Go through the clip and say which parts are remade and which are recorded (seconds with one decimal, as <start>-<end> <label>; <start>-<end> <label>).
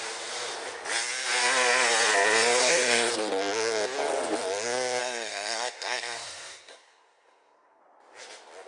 0.0-2.6 recorded; 2.6-3.1 remade; 3.1-5.0 recorded; 5.0-7.8 remade; 7.8-8.7 recorded